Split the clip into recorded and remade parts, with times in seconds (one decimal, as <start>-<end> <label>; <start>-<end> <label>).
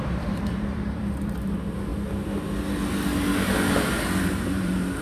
0.0-1.9 remade; 1.9-4.2 recorded; 4.2-5.0 remade